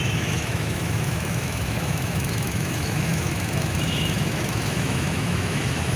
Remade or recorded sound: remade